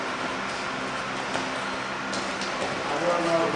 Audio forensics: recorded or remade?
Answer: recorded